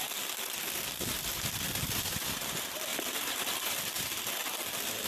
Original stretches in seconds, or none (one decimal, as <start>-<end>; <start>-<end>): 0.0-5.1